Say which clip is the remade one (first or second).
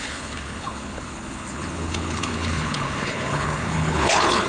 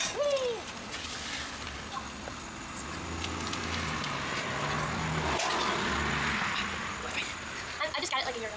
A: first